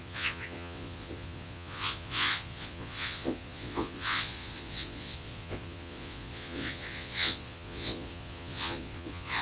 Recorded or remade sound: remade